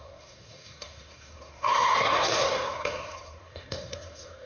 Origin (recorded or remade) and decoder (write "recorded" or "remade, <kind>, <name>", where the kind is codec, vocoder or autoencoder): remade, codec, SNAC